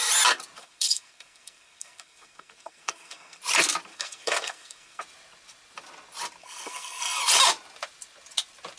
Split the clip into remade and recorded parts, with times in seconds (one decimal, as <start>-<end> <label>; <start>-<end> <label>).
0.0-0.6 recorded; 0.6-3.4 remade; 3.4-3.9 recorded; 3.9-5.0 remade; 5.0-6.4 recorded; 6.4-7.2 remade; 7.2-8.8 recorded